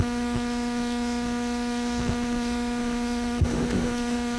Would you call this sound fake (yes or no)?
yes